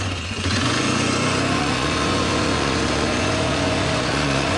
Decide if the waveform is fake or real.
fake